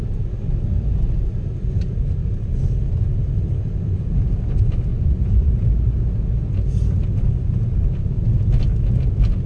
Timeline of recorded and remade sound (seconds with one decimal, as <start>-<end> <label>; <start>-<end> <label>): 0.0-4.9 recorded; 4.9-5.5 remade; 5.5-9.5 recorded